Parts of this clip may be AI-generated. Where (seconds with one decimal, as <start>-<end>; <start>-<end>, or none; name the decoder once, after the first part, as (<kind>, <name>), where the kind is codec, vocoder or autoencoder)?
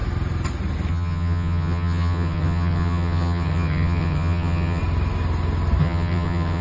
0.9-4.8 (vocoder, HiFi-GAN); 5.8-6.6